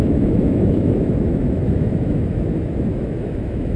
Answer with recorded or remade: remade